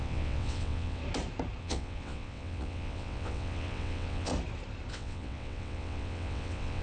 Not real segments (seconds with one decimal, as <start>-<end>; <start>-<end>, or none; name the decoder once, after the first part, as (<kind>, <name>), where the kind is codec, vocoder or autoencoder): 0.0-1.0 (vocoder, WaveNeXt); 1.6-4.3; 4.9-6.8